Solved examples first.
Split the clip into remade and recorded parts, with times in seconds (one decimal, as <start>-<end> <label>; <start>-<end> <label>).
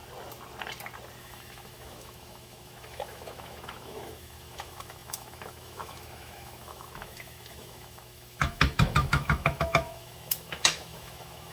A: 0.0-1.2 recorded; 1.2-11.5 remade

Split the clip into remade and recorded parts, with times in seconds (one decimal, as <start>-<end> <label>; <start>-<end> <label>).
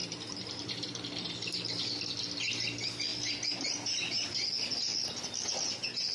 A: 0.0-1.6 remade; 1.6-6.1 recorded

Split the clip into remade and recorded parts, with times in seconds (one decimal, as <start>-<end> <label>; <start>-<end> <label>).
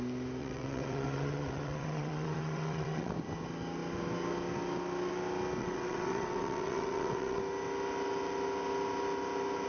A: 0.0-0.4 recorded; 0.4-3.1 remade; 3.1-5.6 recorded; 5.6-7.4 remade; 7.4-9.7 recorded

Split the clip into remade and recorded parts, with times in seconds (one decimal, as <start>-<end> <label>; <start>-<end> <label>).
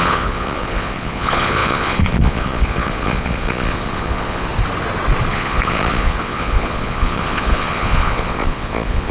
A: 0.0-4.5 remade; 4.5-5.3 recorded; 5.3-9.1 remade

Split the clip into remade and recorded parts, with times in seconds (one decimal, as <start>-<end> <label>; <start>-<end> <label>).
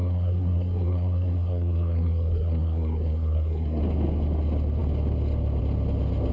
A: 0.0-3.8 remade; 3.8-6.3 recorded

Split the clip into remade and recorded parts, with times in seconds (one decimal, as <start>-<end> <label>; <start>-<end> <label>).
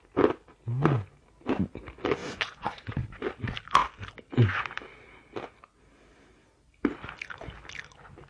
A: 0.0-2.2 recorded; 2.2-2.9 remade; 2.9-8.3 recorded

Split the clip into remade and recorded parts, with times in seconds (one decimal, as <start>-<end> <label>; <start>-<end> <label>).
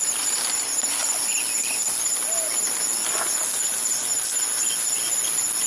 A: 0.0-5.7 recorded